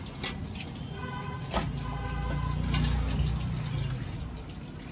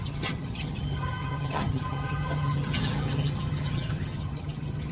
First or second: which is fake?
second